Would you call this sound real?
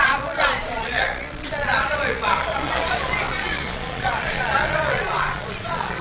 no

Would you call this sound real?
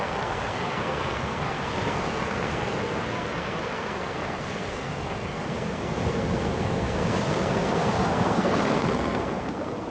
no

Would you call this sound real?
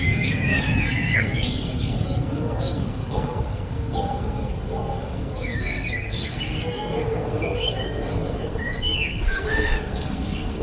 no